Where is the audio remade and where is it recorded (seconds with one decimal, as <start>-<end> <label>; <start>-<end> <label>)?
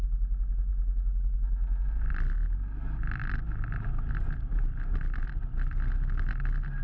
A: 0.0-6.8 recorded